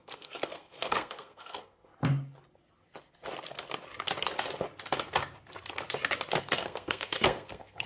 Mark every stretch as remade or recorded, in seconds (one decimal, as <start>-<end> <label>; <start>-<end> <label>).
0.0-1.9 remade; 1.9-6.4 recorded; 6.4-7.9 remade